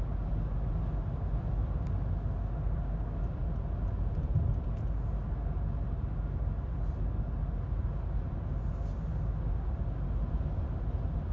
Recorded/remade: recorded